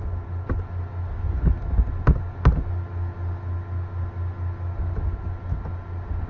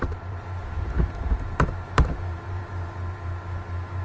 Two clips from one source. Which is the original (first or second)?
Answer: first